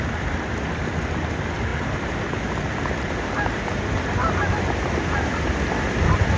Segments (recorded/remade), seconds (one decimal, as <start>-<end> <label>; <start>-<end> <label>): 0.0-6.4 recorded